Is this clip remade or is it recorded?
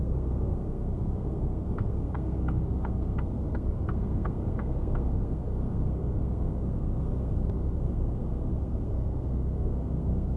remade